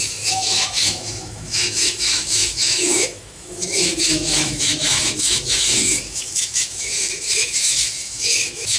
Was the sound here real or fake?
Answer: fake